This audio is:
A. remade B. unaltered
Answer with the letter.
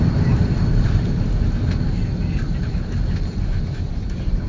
B